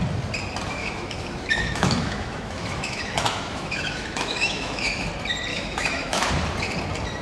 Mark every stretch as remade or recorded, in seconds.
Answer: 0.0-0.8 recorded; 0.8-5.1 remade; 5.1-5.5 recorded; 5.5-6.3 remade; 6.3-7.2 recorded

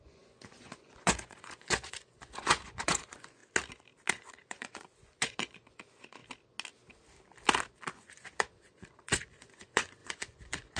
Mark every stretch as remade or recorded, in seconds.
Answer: 0.0-3.4 remade; 3.4-4.1 recorded; 4.1-6.2 remade; 6.2-7.9 recorded; 7.9-10.8 remade

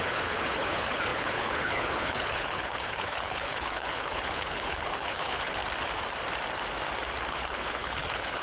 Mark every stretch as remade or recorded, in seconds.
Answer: 0.0-5.6 remade; 5.6-7.3 recorded; 7.3-8.4 remade